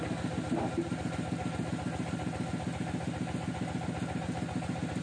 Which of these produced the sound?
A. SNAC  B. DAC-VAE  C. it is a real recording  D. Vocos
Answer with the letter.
C